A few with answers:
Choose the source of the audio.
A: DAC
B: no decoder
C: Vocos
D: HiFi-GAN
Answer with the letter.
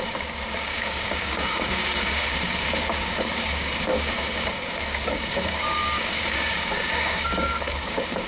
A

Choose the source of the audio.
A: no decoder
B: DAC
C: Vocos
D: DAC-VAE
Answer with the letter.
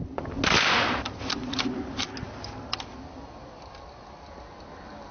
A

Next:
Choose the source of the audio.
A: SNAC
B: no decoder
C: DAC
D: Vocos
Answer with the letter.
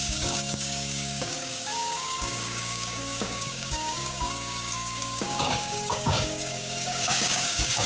C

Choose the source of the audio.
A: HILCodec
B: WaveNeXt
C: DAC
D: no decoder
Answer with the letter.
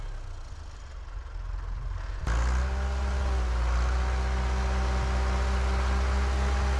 D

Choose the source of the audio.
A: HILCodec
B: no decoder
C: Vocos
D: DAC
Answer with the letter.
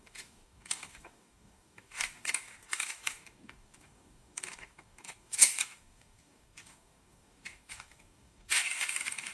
D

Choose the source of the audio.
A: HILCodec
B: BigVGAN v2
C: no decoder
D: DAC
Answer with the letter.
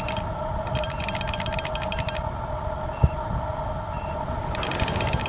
C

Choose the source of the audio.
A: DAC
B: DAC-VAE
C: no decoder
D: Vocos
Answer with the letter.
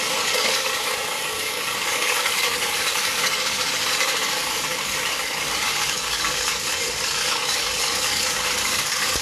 A